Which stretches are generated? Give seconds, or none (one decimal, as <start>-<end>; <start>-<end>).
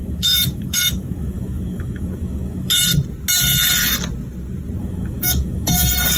0.0-2.8; 4.8-6.2